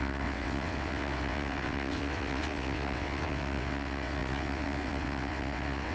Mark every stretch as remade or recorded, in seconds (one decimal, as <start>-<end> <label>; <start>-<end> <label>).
0.0-5.9 remade